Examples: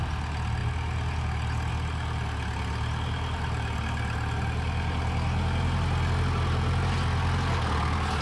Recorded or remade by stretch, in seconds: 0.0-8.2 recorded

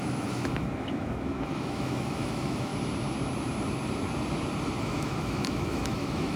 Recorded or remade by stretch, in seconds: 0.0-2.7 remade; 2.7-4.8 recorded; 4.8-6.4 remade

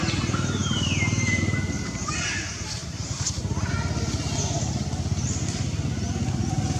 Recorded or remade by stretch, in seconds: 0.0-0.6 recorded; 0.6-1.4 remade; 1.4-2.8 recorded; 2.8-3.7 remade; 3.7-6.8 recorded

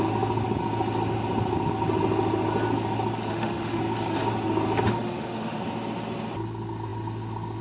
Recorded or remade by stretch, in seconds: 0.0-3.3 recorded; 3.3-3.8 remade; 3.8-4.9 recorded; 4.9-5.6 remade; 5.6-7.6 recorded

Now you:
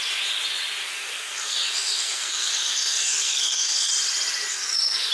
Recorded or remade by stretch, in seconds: 0.0-0.8 recorded; 0.8-3.9 remade; 3.9-4.5 recorded; 4.5-5.1 remade